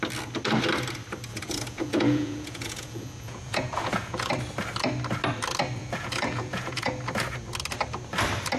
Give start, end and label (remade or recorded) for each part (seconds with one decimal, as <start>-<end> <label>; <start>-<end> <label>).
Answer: 0.0-1.3 recorded; 1.3-4.3 remade; 4.3-5.8 recorded; 5.8-6.9 remade; 6.9-8.6 recorded